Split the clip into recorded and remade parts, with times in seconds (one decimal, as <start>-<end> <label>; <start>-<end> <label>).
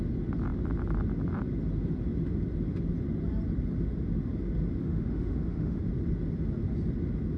0.0-4.8 recorded; 4.8-5.8 remade; 5.8-7.4 recorded